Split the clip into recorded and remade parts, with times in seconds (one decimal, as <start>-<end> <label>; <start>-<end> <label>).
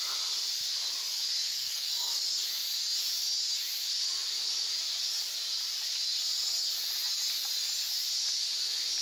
0.0-1.4 recorded; 1.4-2.2 remade; 2.2-9.0 recorded